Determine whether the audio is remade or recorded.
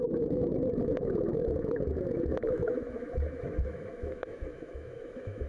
remade